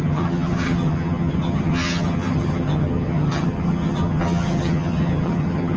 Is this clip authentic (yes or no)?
no